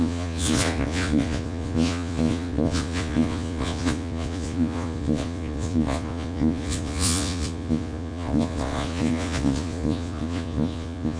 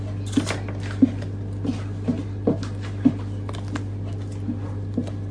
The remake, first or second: first